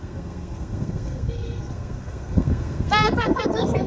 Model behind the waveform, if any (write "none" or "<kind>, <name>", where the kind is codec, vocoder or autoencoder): codec, SNAC